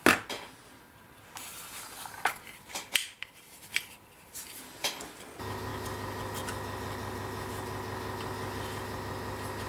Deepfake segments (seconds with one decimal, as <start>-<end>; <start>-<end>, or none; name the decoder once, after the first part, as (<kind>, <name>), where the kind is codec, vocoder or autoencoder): none